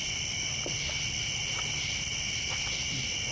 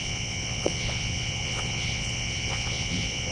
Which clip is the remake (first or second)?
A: second